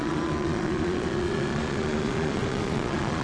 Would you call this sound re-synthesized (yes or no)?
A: yes